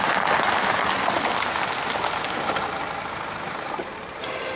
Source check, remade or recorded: recorded